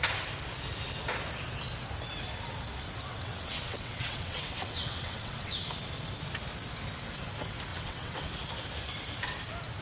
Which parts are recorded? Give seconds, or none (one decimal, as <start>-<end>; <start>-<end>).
0.0-3.1; 5.5-7.7; 8.3-9.8